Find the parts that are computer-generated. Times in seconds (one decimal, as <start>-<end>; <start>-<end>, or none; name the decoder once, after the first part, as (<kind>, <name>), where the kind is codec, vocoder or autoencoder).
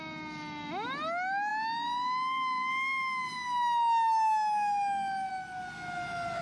none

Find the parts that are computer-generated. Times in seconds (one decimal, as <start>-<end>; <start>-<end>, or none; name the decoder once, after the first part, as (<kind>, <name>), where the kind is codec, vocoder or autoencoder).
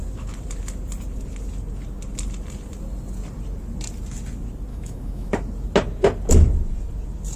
4.7-5.3 (autoencoder, DAC-VAE)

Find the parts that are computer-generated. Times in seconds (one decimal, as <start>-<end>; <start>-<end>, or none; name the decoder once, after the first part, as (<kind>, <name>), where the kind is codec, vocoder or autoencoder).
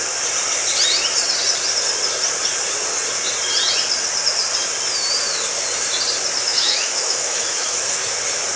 6.4-8.2 (autoencoder, DAC-VAE)